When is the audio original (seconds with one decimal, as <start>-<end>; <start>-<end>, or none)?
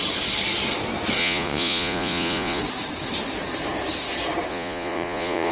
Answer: 0.0-1.2; 2.6-4.5